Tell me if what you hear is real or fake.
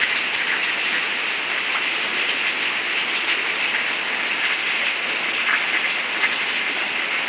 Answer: real